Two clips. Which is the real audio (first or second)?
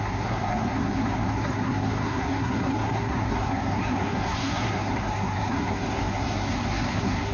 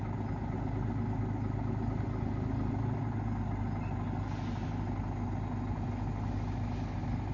second